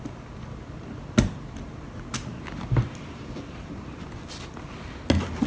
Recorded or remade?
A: recorded